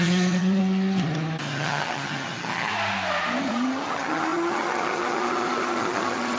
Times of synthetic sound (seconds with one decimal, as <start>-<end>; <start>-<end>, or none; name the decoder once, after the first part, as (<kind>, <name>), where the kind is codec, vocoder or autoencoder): 0.0-0.6 (vocoder, HiFi-GAN); 1.4-2.7; 3.4-6.4